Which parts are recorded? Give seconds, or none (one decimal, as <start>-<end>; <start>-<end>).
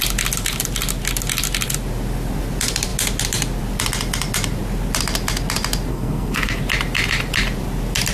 0.0-5.9; 6.6-8.1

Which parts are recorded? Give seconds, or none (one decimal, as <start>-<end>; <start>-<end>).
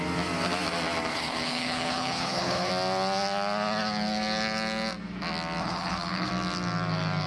0.0-1.1; 2.7-5.6; 6.3-7.3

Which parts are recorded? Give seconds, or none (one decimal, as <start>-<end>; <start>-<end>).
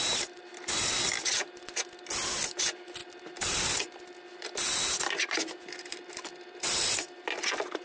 0.0-7.8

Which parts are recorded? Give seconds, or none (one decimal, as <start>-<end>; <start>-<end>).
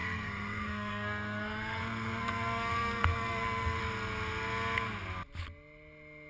3.8-6.3